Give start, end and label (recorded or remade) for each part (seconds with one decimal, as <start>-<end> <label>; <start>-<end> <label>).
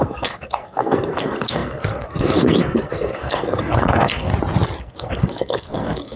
0.0-4.3 remade; 4.3-4.8 recorded; 4.8-6.2 remade